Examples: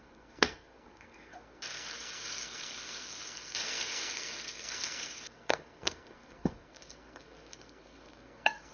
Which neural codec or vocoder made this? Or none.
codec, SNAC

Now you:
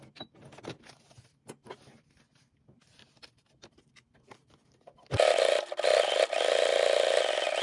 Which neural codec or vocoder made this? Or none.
none